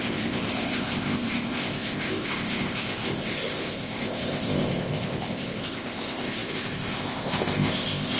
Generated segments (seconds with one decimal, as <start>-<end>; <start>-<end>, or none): 0.0-8.2